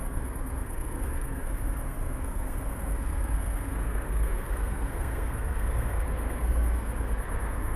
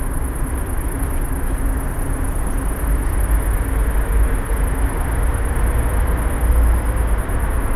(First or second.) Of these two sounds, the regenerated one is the first